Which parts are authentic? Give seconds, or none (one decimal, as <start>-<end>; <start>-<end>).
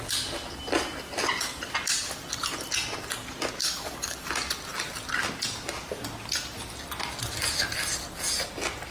0.0-3.6; 4.3-8.9